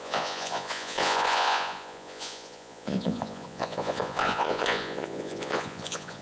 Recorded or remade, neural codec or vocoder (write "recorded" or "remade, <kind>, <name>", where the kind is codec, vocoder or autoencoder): remade, vocoder, Vocos